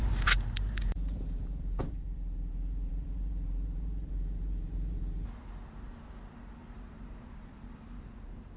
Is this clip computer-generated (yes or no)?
yes